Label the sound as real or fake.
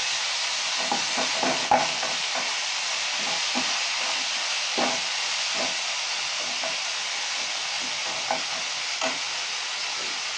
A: real